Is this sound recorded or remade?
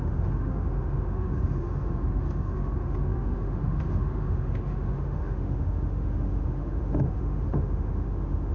remade